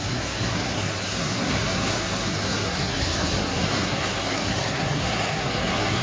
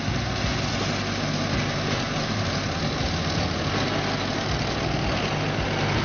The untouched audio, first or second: second